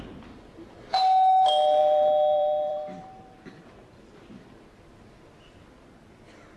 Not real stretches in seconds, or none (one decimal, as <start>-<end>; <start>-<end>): 1.8-3.4